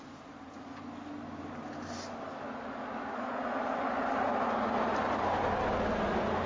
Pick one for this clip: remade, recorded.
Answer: recorded